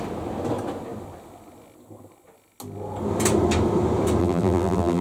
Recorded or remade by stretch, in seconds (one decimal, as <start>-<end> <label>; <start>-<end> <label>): 0.0-4.2 recorded; 4.2-5.0 remade